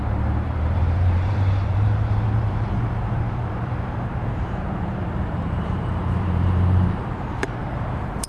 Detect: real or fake fake